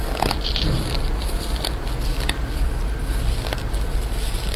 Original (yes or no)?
yes